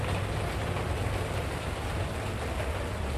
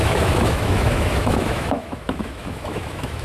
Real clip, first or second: first